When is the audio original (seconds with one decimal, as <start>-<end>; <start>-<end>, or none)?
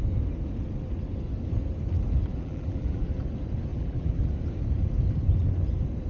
0.0-2.3; 3.1-3.7; 4.3-6.1